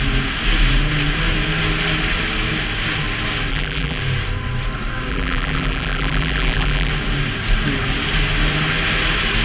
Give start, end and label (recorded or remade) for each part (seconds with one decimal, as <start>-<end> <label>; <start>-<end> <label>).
0.0-3.5 recorded; 3.5-4.0 remade; 4.0-5.1 recorded; 5.1-6.9 remade; 6.9-9.4 recorded